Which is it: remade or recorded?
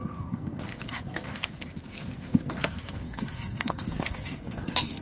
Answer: remade